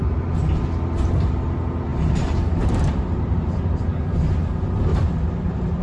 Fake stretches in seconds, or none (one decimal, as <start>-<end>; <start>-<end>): 1.9-3.8; 4.9-5.8